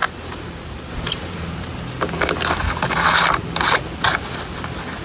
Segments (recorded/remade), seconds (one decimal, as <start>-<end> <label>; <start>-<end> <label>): 0.0-1.7 remade; 1.7-5.0 recorded